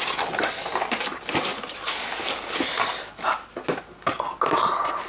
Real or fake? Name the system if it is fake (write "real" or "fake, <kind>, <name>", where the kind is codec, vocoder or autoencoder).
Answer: real